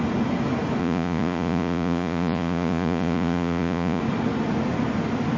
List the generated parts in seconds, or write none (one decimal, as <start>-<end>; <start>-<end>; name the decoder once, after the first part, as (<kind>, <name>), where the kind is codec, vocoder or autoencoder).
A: 0.8-4.0 (vocoder, Vocos)